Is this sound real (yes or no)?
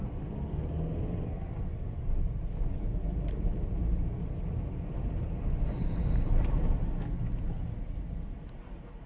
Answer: yes